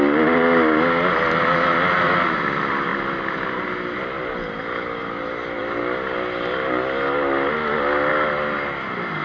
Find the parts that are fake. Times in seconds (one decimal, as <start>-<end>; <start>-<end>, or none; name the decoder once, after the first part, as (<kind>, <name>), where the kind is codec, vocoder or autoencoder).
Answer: none